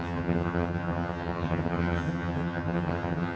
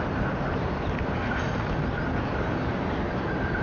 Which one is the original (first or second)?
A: second